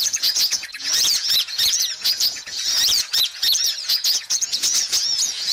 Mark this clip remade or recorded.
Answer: remade